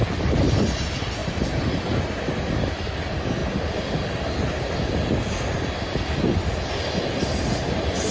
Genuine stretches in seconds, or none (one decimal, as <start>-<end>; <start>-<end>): 0.0-8.1